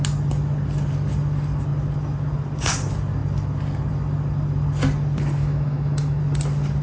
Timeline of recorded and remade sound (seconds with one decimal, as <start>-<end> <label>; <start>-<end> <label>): 0.0-5.4 recorded; 5.4-6.2 remade; 6.2-6.8 recorded